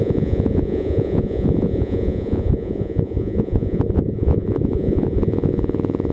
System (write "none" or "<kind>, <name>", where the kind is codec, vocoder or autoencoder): vocoder, Vocos